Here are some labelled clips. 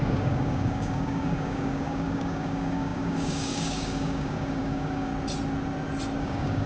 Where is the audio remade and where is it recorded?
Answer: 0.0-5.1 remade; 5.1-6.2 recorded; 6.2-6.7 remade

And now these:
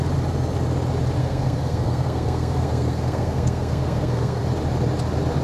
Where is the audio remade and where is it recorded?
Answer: 0.0-1.2 recorded; 1.2-4.4 remade; 4.4-5.4 recorded

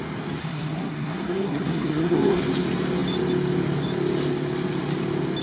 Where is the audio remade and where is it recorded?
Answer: 0.0-0.4 recorded; 0.4-2.4 remade; 2.4-5.4 recorded

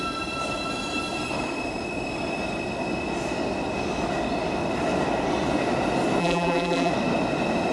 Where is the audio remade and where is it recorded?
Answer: 0.0-6.2 recorded; 6.2-6.9 remade; 6.9-7.7 recorded

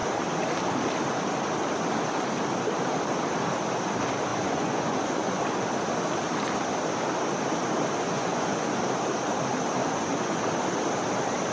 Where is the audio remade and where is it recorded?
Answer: 0.0-4.3 recorded; 4.3-5.4 remade; 5.4-8.0 recorded; 8.0-8.7 remade; 8.7-9.8 recorded; 9.8-10.4 remade; 10.4-11.5 recorded

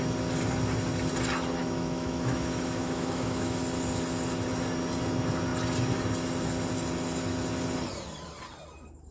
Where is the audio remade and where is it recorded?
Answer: 0.0-1.6 recorded; 1.6-3.6 remade; 3.6-9.1 recorded